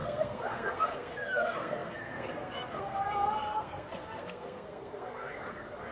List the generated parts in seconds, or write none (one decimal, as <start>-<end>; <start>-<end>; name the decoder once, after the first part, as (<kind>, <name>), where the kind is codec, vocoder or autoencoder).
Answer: 0.0-5.9 (codec, SNAC)